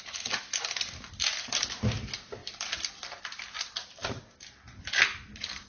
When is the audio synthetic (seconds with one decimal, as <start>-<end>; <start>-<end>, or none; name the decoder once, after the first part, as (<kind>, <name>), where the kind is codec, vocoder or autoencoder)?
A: none